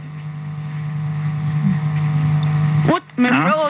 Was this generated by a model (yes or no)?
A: no